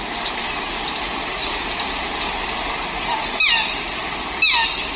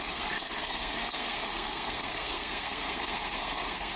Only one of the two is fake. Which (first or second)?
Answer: second